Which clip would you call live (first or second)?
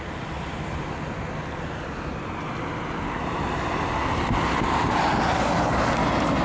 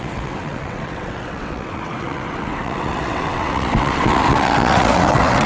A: first